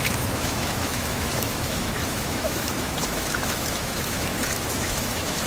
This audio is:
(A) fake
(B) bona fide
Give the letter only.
A